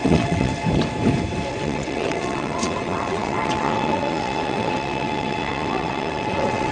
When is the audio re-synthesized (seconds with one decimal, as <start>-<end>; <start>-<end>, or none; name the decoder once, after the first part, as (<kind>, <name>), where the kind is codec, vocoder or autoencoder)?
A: 0.0-0.5 (vocoder, WaveNeXt); 1.5-6.7